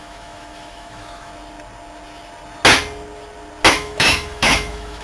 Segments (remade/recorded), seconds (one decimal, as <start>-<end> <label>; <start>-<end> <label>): 0.0-1.3 remade; 1.3-3.7 recorded; 3.7-5.0 remade